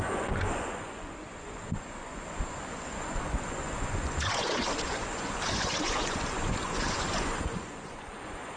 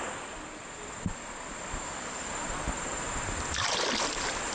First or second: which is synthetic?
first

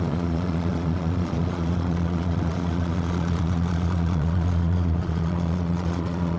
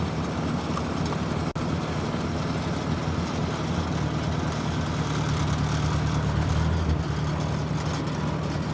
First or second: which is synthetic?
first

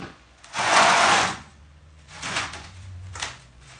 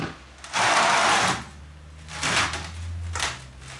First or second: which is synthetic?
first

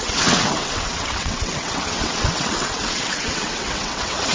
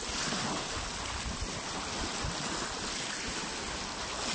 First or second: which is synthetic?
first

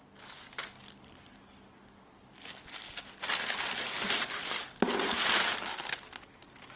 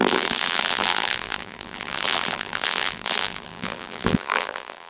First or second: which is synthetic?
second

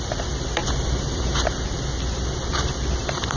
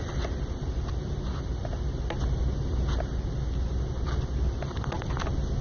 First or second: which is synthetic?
first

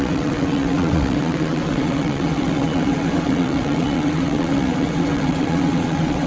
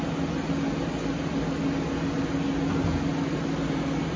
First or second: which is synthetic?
first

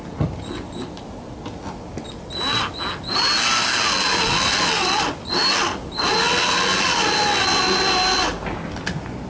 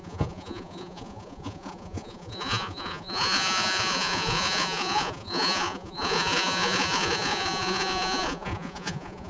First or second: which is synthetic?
second